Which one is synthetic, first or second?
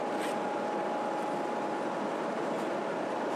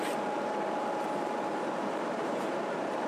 second